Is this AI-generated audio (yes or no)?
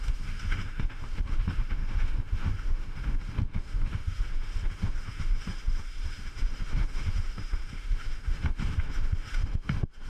yes